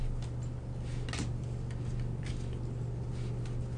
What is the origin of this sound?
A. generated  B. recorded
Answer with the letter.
B